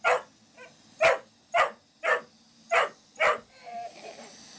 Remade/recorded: recorded